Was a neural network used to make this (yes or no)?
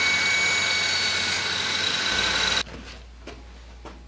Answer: no